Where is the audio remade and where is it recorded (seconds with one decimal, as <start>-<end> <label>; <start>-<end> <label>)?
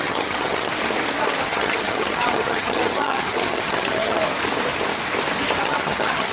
0.0-0.7 remade; 0.7-1.5 recorded; 1.5-4.2 remade; 4.2-5.6 recorded; 5.6-6.3 remade